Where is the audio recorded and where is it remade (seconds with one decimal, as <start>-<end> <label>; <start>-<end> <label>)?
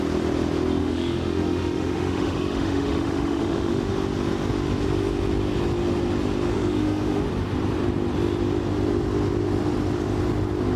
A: 0.0-0.8 recorded; 0.8-3.9 remade; 3.9-6.5 recorded; 6.5-7.2 remade; 7.2-10.8 recorded